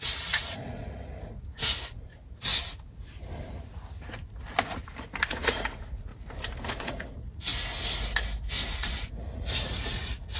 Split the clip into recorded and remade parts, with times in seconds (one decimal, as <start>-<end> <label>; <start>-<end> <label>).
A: 0.0-2.5 remade; 2.5-5.3 recorded; 5.3-6.1 remade; 6.1-6.7 recorded; 6.7-7.5 remade; 7.5-8.7 recorded; 8.7-10.4 remade